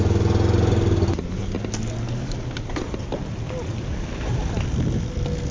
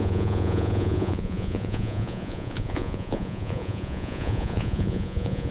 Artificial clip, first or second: second